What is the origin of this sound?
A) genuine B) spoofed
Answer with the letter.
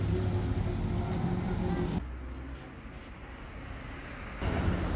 A